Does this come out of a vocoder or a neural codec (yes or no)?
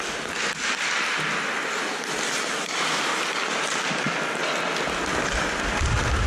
no